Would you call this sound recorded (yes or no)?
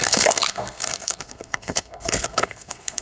no